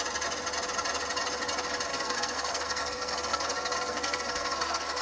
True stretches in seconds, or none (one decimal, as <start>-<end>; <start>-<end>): 0.0-1.9